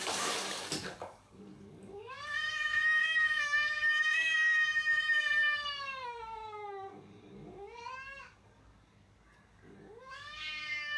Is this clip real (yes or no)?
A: no